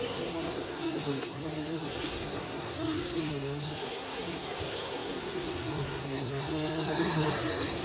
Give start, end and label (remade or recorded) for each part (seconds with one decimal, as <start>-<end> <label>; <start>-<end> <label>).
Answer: 0.0-7.8 remade